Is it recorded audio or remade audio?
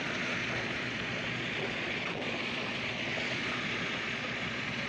remade